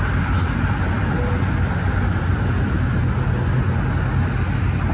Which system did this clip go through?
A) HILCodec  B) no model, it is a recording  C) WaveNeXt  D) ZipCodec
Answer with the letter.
B